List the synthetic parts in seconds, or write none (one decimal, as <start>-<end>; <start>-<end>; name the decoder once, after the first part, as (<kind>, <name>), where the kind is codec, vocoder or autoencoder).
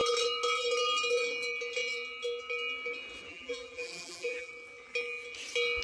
3.3-4.5 (vocoder, BigVGAN v2)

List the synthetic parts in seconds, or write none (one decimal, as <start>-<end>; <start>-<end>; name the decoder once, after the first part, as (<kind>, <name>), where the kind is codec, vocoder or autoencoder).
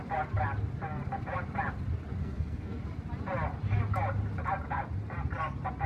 2.2-2.8 (codec, SNAC)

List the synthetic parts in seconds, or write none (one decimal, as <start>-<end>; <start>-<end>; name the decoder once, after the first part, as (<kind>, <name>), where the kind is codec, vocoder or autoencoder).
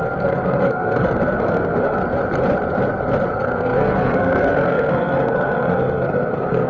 0.0-2.0 (codec, SNAC); 3.3-6.7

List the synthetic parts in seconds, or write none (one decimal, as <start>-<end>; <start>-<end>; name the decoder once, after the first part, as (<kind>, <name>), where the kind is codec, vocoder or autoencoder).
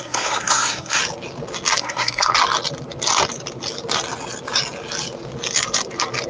0.0-1.0 (codec, SNAC); 1.8-2.3